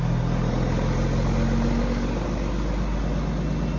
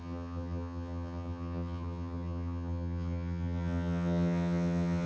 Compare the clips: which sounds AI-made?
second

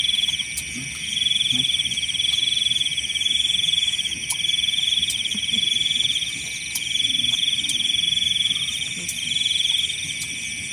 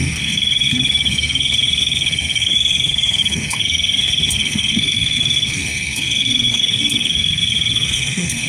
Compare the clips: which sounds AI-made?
second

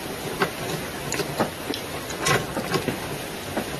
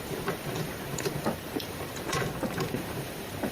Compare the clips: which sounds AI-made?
second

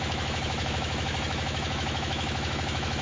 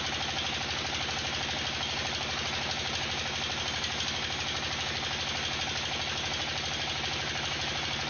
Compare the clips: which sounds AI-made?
first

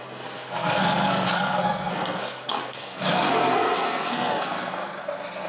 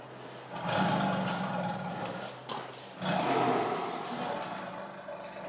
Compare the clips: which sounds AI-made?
first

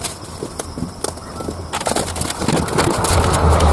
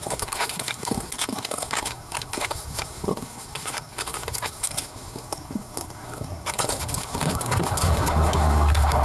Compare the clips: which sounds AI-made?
second